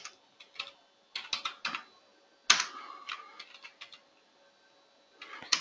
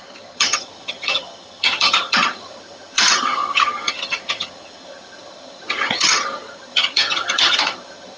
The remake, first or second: second